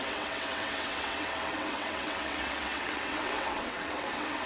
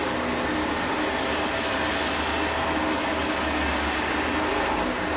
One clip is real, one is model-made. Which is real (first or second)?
second